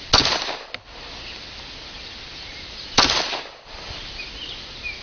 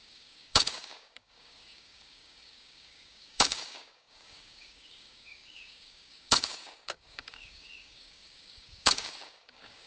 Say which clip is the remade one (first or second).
second